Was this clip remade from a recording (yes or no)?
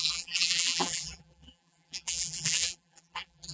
yes